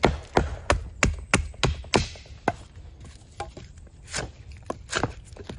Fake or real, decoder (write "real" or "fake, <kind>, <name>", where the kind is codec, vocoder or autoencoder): real